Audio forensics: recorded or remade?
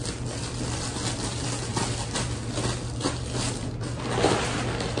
recorded